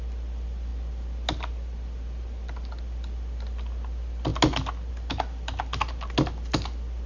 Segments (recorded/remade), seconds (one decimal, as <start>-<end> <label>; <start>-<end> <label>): 0.0-7.1 recorded